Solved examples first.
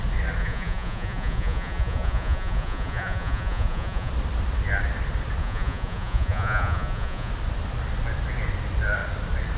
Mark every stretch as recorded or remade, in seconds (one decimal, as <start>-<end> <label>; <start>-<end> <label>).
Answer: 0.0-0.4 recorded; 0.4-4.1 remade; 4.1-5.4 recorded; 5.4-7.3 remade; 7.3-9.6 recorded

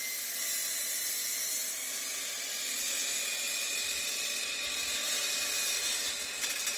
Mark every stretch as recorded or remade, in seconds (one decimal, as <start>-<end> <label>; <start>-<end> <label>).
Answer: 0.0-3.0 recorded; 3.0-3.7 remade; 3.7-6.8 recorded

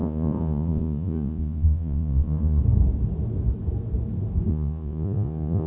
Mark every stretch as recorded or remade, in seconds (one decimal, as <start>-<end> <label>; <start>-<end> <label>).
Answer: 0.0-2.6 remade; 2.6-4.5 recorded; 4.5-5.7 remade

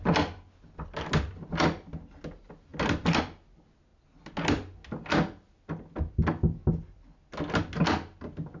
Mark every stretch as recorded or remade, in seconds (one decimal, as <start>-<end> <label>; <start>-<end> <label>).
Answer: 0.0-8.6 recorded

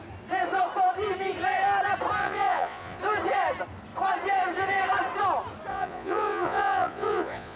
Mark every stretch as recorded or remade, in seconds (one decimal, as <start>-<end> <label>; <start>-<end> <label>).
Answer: 0.0-2.2 recorded; 2.2-3.0 remade; 3.0-5.7 recorded; 5.7-7.6 remade

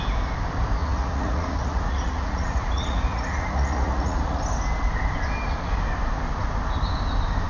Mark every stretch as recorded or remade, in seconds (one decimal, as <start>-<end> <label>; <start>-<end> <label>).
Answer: 0.0-0.8 recorded; 0.8-4.4 remade; 4.4-7.5 recorded